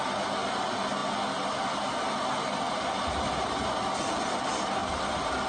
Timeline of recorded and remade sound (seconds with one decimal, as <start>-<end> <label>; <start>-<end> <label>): 0.0-5.5 recorded